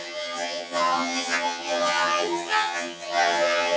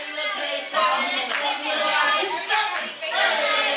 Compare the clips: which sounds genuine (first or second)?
second